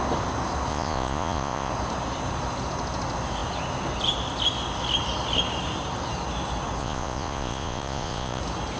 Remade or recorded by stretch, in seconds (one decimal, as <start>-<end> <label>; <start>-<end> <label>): 0.0-0.7 recorded; 0.7-1.7 remade; 1.7-6.8 recorded; 6.8-8.4 remade; 8.4-8.8 recorded